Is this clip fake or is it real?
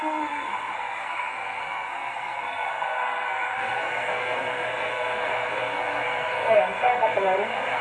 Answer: fake